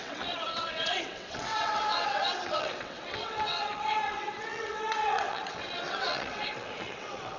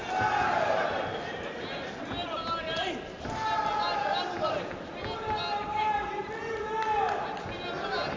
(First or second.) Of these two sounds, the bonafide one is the second